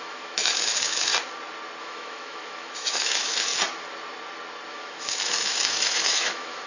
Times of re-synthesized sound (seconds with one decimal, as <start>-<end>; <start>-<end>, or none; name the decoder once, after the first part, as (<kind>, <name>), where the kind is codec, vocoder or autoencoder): 0.0-1.1 (autoencoder, DAC-VAE); 1.8-3.5; 4.7-6.7